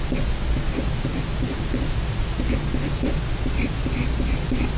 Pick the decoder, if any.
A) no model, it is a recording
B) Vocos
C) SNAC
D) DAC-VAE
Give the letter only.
A